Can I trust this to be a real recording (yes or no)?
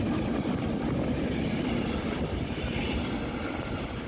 yes